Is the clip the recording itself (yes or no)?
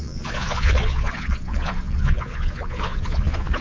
no